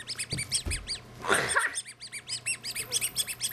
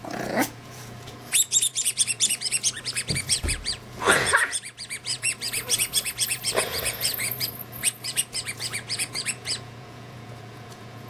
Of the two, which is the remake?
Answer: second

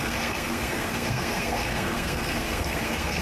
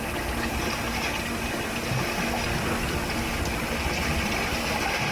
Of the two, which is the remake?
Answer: first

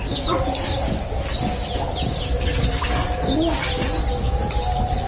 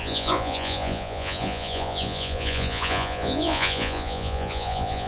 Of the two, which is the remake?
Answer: second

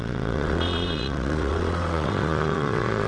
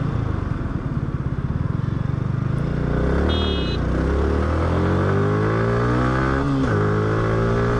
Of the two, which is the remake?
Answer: first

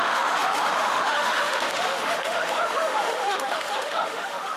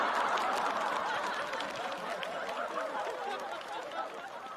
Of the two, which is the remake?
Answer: first